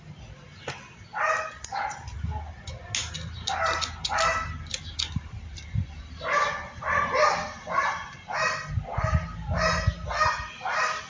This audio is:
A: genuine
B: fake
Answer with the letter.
A